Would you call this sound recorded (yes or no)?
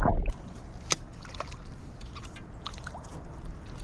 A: yes